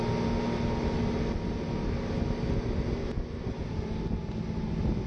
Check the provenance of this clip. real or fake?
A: real